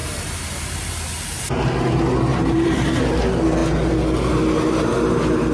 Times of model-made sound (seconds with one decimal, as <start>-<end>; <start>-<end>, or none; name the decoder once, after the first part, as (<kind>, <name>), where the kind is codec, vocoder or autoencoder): 0.0-1.4 (vocoder, BigVGAN v2); 2.3-3.0